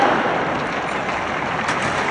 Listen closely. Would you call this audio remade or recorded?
recorded